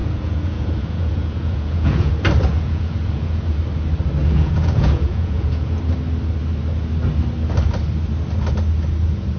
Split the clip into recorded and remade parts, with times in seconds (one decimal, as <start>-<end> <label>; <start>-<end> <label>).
0.0-2.1 remade; 2.1-2.5 recorded; 2.5-3.6 remade; 3.6-4.2 recorded; 4.2-5.8 remade; 5.8-9.4 recorded